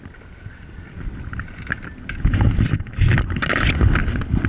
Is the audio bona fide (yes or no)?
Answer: yes